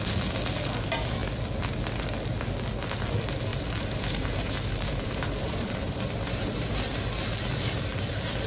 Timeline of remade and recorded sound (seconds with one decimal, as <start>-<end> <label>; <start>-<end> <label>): 0.0-3.5 recorded; 3.5-6.9 remade; 6.9-8.5 recorded